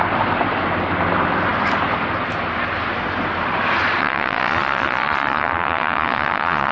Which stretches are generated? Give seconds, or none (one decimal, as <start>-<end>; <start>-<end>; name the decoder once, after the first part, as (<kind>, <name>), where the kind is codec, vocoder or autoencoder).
4.0-6.7 (vocoder, Vocos)